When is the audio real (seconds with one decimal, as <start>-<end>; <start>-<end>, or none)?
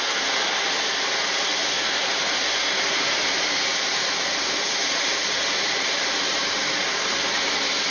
0.0-3.2; 7.4-7.9